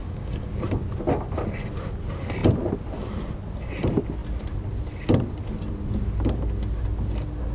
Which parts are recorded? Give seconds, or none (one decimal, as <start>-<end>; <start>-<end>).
0.5-7.5